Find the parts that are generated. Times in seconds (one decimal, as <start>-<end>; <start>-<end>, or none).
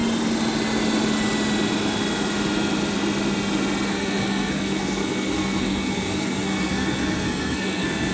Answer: 3.9-8.1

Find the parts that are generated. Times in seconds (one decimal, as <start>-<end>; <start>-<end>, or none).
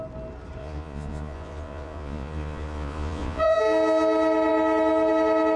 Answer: 0.6-3.6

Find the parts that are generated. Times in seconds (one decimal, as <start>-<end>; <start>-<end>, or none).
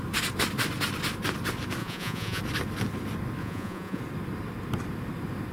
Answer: 1.8-2.4; 3.4-4.0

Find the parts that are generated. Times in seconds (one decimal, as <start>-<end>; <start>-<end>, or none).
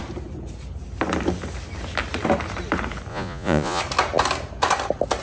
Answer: 3.1-3.8